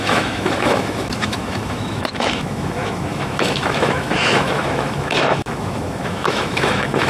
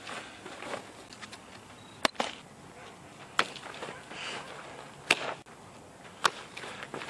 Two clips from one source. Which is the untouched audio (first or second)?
second